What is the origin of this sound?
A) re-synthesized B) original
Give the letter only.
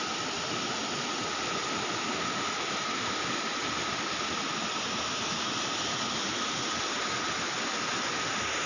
B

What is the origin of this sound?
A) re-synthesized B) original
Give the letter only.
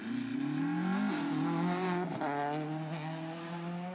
B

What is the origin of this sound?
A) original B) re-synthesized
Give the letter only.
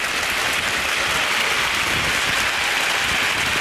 A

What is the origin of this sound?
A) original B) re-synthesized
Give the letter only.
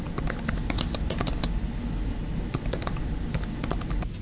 A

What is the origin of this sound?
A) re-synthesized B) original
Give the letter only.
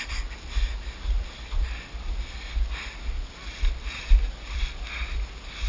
B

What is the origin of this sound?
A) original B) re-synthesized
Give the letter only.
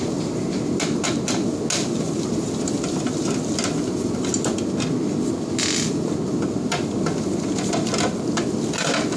A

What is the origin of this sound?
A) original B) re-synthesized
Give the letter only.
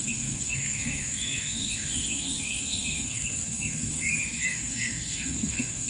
B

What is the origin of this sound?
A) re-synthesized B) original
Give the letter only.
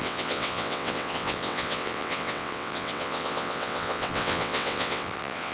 A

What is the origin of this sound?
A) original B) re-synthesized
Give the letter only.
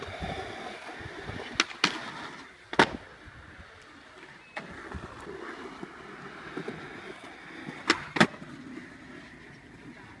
A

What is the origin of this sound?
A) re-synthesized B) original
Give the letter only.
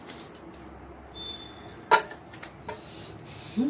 B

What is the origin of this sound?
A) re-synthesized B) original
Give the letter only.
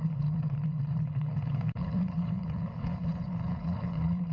A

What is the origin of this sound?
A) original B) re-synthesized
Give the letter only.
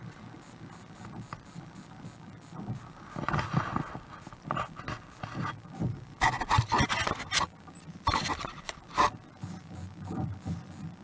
A